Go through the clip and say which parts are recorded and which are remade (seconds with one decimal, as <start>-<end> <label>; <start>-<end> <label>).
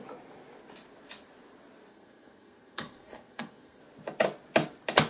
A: 0.0-1.9 recorded; 1.9-3.8 remade; 3.8-5.1 recorded